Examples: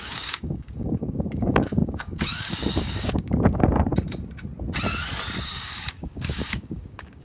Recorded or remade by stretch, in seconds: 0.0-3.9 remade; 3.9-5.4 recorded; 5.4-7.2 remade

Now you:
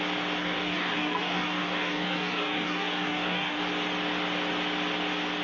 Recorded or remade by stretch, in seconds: 0.0-0.4 recorded; 0.4-3.6 remade; 3.6-5.4 recorded

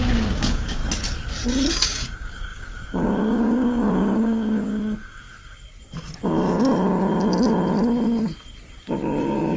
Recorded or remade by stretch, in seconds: 0.0-0.8 remade; 0.8-1.7 recorded; 1.7-5.3 remade; 5.3-9.2 recorded; 9.2-9.6 remade

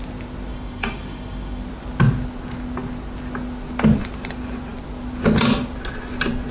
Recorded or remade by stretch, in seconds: 0.0-0.5 recorded; 0.5-1.6 remade; 1.6-6.5 recorded

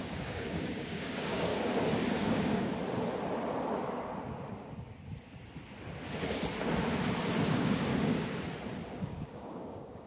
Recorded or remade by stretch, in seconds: 0.0-1.5 remade; 1.5-2.1 recorded; 2.1-2.7 remade; 2.7-7.5 recorded; 7.5-7.9 remade; 7.9-9.0 recorded; 9.0-10.1 remade